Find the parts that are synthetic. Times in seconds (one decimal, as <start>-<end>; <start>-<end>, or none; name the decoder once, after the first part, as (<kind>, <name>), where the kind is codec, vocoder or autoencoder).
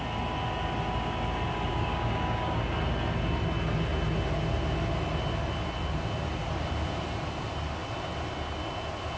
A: 1.7-2.6 (codec, DAC)